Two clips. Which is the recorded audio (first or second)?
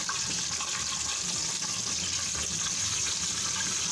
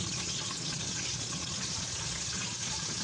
first